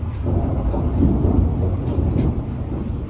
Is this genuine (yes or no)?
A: yes